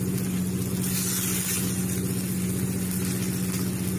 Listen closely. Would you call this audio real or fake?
real